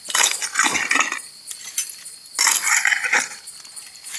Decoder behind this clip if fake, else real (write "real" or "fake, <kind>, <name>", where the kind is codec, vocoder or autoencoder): real